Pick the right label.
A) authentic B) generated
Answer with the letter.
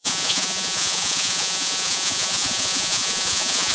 B